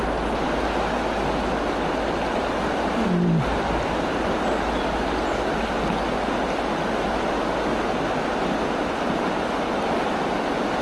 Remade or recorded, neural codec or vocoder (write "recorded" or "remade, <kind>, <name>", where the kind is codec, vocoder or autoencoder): recorded